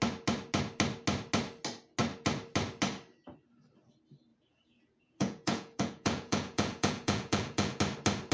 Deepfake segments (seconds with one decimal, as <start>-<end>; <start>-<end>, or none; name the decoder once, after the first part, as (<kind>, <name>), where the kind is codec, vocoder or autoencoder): 4.3-7.8 (vocoder, Vocos)